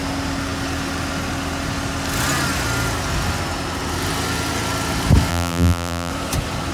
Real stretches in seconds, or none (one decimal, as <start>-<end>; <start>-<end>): 0.0-5.3; 6.1-6.7